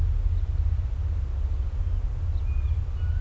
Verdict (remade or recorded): recorded